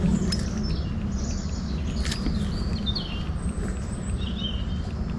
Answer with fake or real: real